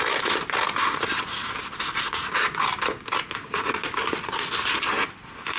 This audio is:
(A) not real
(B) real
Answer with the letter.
B